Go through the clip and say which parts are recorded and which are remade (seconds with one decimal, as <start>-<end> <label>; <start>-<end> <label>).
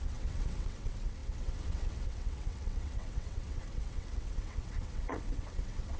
0.0-6.0 remade